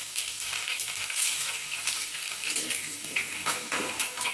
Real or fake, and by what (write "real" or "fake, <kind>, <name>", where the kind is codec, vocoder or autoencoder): fake, codec, DAC